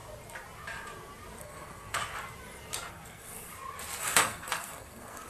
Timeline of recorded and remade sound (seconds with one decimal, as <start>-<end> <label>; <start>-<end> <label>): 0.0-1.4 recorded; 1.4-2.0 remade; 2.0-2.9 recorded; 2.9-3.5 remade; 3.5-4.0 recorded; 4.0-5.3 remade